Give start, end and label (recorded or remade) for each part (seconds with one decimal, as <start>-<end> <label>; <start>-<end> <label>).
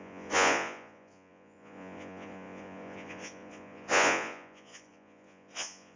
0.0-6.0 remade